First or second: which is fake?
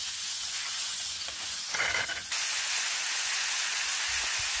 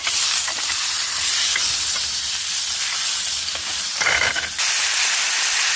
first